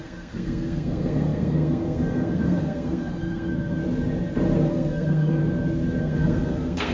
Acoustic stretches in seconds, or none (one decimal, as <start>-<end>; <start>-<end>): 3.8-4.7; 5.4-6.0